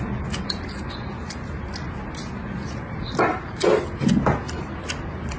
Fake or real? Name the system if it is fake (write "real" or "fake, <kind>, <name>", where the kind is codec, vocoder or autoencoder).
real